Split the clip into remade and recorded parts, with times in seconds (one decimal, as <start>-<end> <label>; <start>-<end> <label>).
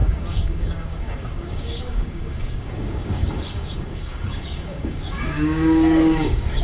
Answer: 0.0-6.6 remade